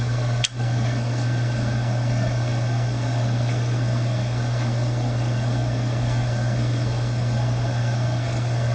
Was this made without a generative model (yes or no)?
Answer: no